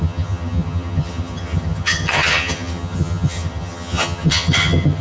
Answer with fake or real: fake